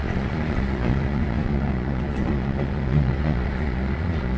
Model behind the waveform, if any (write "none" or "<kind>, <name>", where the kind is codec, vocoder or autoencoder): vocoder, Vocos